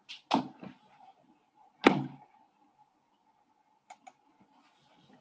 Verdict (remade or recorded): recorded